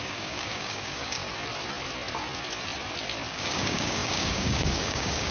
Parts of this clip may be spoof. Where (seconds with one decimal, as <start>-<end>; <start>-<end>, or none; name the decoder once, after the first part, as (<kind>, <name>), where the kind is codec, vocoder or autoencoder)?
0.0-1.2 (codec, DAC); 3.3-5.3